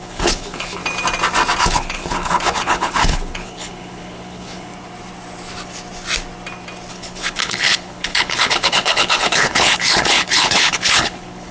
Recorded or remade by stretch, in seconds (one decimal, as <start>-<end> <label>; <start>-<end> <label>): 0.0-0.8 remade; 0.8-1.6 recorded; 1.6-4.7 remade; 4.7-6.9 recorded; 6.9-11.5 remade